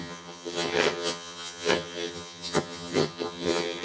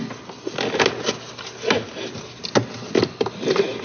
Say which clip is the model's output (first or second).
first